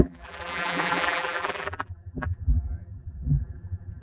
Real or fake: fake